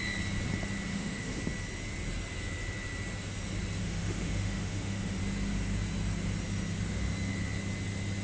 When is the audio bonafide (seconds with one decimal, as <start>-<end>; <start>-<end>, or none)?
0.0-0.9; 1.4-3.8; 5.2-8.2